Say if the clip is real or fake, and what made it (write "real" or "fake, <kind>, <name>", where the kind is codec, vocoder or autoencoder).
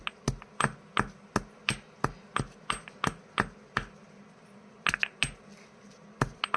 real